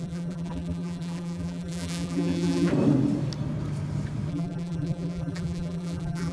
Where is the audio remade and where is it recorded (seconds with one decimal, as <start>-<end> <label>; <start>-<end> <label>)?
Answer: 0.0-2.7 remade; 2.7-4.3 recorded; 4.3-6.3 remade